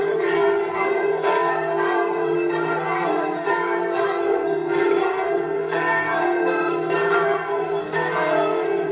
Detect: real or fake fake